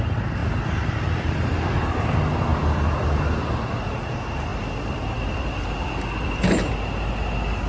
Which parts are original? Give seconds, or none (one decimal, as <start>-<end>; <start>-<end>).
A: 0.0-7.7